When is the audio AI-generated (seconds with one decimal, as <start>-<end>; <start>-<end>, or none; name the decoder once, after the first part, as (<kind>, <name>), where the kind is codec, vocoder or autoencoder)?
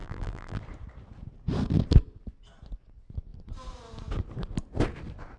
0.0-0.6 (vocoder, BigVGAN v2)